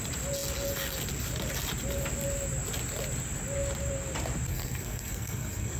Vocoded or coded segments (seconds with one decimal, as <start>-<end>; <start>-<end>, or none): 4.5-5.8